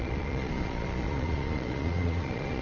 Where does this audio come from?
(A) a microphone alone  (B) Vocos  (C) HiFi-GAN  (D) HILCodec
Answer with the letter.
B